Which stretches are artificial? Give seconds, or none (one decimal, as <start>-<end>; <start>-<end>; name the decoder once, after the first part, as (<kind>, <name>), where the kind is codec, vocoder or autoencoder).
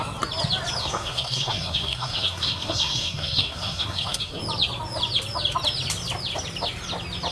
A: 0.8-4.4 (codec, SNAC)